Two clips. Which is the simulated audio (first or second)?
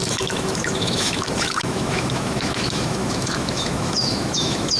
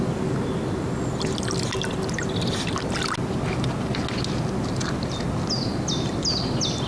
first